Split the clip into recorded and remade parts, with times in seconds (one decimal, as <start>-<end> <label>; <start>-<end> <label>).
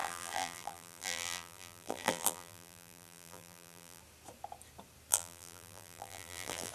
0.0-4.0 remade; 4.0-5.1 recorded; 5.1-6.7 remade